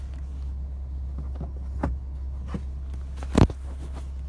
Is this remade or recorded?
recorded